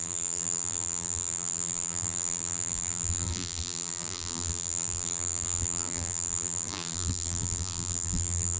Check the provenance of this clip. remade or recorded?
remade